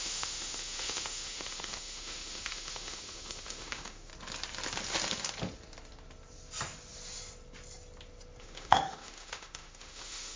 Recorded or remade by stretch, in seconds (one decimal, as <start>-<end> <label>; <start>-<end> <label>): 0.0-4.1 remade; 4.1-8.4 recorded; 8.4-10.4 remade